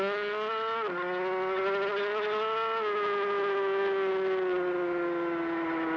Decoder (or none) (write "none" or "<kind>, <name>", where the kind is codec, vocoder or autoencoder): none